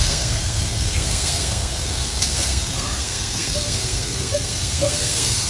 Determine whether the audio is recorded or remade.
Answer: remade